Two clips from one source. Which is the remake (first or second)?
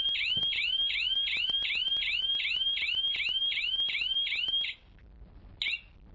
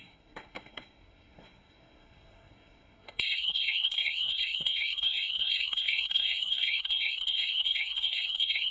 second